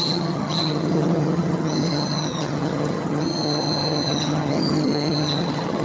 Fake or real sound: fake